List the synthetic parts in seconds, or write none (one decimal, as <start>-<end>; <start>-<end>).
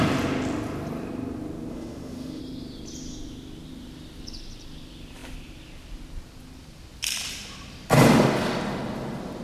1.7-2.4